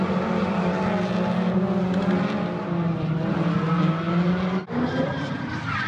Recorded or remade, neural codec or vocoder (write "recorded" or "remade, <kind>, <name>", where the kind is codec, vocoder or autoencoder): recorded